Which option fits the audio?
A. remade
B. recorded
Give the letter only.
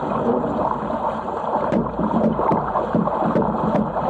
A